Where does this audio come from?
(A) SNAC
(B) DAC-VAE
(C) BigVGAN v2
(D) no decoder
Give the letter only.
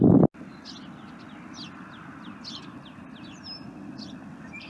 D